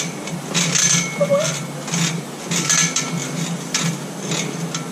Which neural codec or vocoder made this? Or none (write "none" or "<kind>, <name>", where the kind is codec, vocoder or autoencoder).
none